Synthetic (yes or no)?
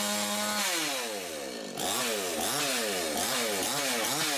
no